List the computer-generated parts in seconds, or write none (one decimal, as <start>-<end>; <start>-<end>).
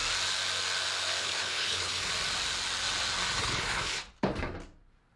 1.2-2.1; 3.4-4.0